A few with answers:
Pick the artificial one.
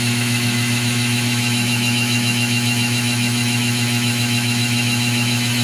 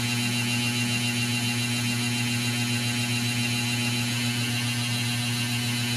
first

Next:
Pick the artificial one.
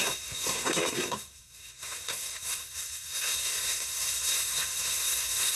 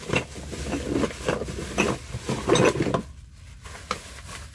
first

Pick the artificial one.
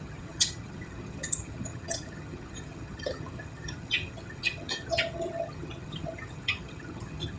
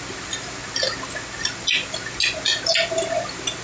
first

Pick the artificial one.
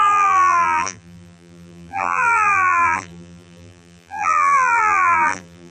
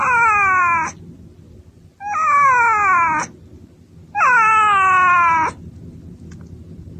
first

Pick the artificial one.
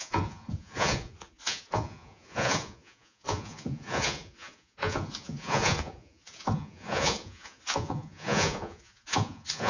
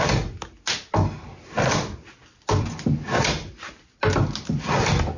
first